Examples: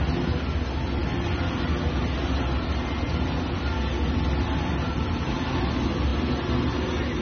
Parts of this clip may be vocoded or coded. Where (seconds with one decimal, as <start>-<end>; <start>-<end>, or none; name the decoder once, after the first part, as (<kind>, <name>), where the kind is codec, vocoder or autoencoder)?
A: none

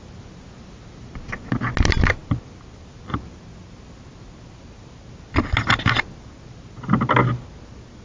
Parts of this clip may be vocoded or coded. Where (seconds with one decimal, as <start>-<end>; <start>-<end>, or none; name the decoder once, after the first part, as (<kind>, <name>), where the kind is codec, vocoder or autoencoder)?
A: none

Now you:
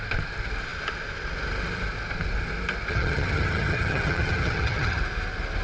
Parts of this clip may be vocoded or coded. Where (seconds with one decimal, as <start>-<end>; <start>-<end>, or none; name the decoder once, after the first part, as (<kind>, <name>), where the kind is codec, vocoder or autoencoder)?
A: 2.9-5.0 (vocoder, HiFi-GAN)